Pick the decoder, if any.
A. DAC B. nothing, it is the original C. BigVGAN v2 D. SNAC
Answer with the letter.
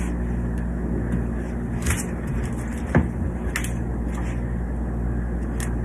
B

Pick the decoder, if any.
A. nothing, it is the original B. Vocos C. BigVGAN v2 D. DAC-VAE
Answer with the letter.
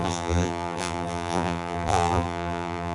C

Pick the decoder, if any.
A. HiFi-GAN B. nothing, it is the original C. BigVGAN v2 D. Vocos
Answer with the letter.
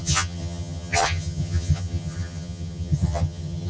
A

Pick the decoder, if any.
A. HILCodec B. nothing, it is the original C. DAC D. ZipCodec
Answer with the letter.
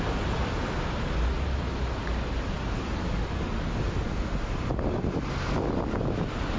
B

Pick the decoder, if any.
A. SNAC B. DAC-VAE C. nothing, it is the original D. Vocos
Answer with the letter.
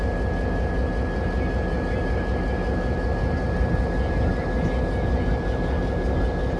C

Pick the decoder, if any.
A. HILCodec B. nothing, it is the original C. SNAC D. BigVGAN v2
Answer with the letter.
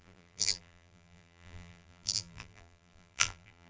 D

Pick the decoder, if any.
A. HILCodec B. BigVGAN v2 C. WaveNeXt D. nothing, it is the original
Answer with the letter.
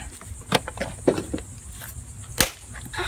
D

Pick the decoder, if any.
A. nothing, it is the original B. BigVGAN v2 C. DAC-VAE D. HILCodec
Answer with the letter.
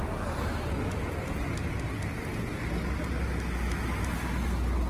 A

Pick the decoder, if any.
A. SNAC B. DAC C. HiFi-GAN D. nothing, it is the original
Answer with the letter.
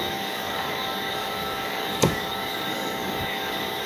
B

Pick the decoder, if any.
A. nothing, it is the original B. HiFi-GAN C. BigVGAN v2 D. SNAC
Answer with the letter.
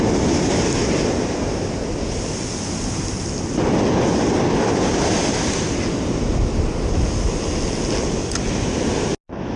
A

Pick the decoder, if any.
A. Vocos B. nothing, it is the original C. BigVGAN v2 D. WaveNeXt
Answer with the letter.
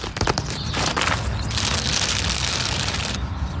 C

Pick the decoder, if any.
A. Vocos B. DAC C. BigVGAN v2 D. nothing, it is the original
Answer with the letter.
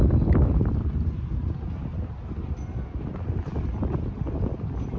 D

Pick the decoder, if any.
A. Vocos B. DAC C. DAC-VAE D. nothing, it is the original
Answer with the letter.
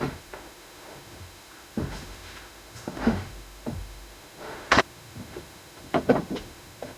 C